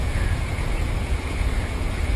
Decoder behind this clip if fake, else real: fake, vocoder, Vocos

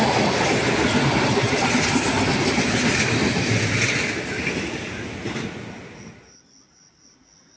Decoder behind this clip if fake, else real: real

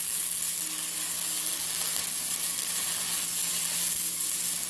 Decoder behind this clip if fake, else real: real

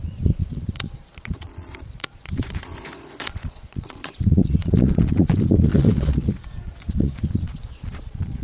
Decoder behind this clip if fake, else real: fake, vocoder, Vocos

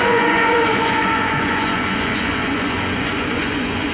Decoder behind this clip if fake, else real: fake, vocoder, Vocos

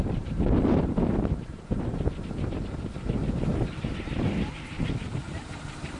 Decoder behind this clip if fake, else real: real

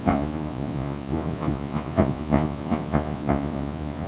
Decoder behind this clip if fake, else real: fake, vocoder, Vocos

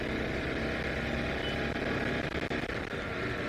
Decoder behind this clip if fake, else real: real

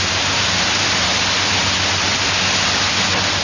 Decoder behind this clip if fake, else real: real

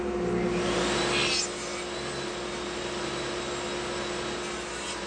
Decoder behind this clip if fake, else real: real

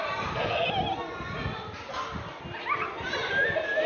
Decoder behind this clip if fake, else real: real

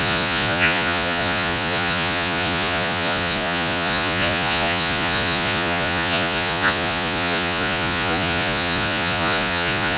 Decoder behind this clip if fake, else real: fake, vocoder, Vocos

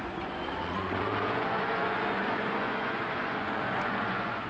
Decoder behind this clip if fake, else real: fake, vocoder, Vocos